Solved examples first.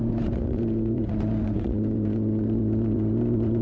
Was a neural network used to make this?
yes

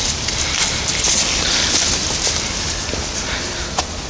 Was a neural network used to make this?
no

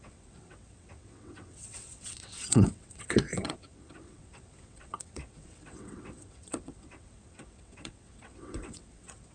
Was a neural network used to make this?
yes